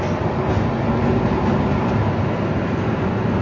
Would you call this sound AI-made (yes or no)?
no